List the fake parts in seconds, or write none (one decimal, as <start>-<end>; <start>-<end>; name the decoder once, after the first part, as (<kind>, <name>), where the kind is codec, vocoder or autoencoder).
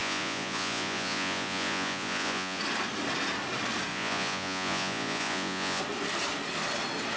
0.0-2.6 (vocoder, Vocos); 3.9-5.8